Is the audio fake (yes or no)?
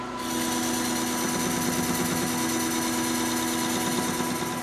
no